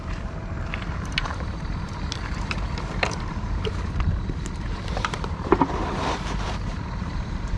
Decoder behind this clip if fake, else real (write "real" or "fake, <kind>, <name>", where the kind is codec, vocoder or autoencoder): fake, vocoder, BigVGAN v2